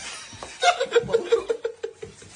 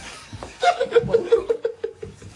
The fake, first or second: second